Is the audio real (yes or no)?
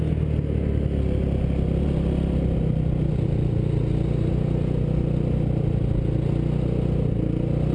yes